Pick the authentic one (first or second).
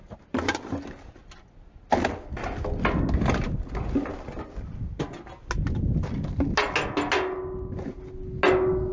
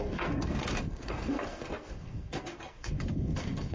first